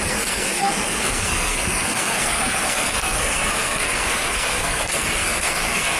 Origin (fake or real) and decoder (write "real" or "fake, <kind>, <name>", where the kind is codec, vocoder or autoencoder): fake, codec, SNAC